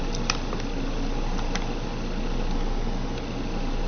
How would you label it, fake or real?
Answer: real